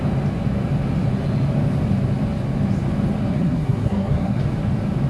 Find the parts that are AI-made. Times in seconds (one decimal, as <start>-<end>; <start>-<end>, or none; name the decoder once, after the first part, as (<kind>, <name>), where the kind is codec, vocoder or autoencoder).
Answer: 3.3-4.4 (codec, SNAC)